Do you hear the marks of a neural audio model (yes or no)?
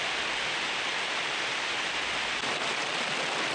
no